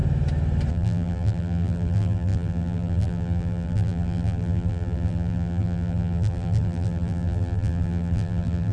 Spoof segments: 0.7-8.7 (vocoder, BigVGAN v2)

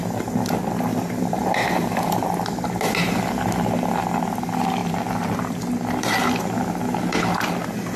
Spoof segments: 0.9-3.0 (vocoder, BigVGAN v2); 4.8-5.6

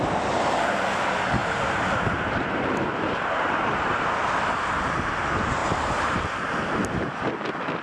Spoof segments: 1.4-4.4 (vocoder, BigVGAN v2); 5.6-7.3